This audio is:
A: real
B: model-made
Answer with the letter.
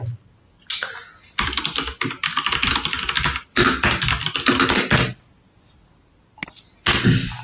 A